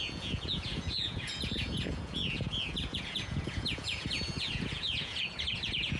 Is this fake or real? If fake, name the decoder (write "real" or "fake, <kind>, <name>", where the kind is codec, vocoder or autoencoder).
fake, vocoder, Vocos